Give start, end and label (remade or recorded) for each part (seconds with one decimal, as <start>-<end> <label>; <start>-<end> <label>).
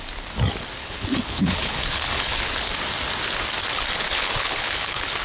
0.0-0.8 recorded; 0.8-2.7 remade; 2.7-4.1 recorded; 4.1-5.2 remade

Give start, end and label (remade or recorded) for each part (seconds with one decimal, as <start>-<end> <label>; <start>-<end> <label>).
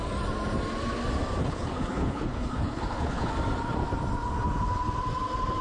0.0-1.4 recorded; 1.4-3.3 remade; 3.3-5.6 recorded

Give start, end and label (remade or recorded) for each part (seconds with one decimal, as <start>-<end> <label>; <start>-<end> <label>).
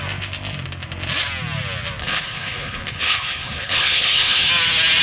0.0-2.0 recorded; 2.0-4.5 remade; 4.5-5.0 recorded